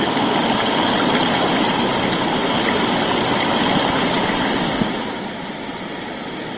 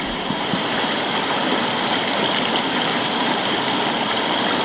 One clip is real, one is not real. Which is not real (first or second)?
first